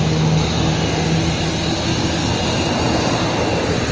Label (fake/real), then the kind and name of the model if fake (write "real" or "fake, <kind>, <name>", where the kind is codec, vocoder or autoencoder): real